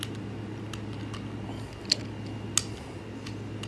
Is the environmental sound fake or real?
real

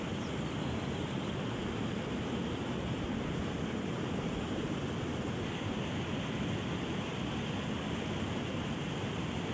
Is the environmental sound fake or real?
real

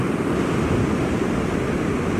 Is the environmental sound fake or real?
real